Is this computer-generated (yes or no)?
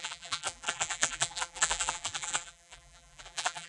yes